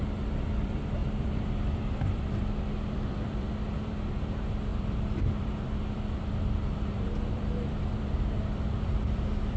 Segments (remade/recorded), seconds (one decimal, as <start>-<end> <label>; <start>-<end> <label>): 0.0-9.6 remade